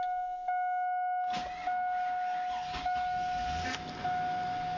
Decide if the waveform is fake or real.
real